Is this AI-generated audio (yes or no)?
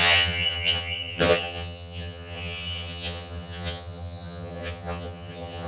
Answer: yes